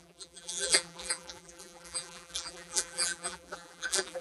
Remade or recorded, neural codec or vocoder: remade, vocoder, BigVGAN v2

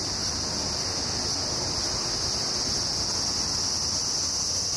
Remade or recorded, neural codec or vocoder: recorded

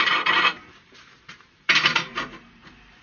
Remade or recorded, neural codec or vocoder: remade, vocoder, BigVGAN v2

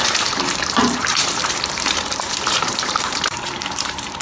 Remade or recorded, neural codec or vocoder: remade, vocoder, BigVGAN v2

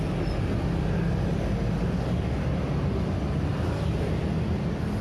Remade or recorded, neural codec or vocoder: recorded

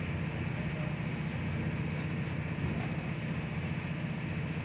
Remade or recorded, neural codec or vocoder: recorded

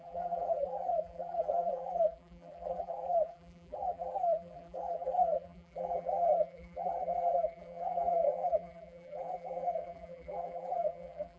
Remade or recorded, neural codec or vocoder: remade, vocoder, BigVGAN v2